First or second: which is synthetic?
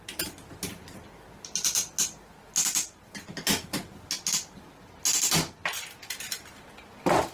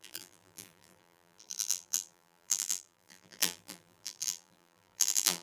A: second